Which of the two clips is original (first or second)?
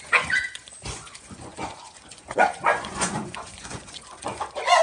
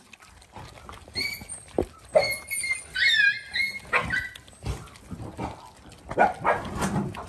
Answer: second